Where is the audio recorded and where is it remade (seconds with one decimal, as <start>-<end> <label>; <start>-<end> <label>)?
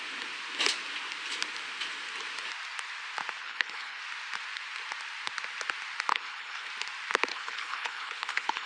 0.0-3.4 recorded; 3.4-4.0 remade; 4.0-6.1 recorded; 6.1-6.7 remade; 6.7-7.3 recorded; 7.3-8.7 remade